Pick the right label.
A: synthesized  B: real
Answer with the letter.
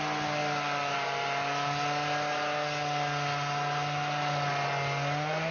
B